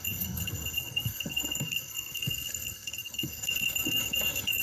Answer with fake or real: fake